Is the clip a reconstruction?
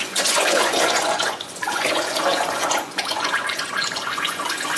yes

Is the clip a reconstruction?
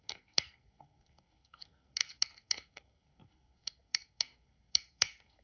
yes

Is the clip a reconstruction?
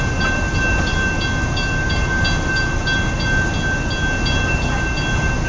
no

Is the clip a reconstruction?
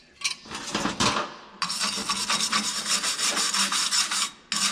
no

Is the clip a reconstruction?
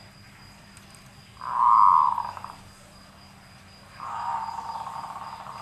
no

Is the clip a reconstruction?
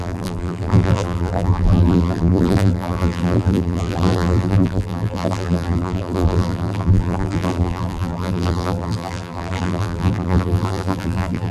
yes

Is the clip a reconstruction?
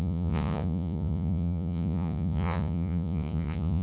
yes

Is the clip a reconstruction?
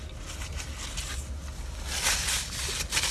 no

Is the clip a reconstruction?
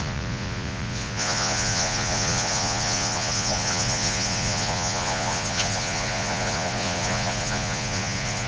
yes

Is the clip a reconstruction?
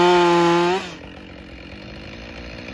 no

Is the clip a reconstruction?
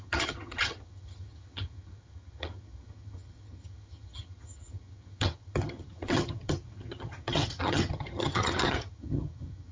yes